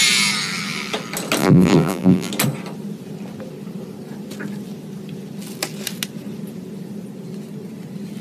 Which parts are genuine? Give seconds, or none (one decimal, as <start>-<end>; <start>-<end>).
0.0-1.4; 2.3-8.2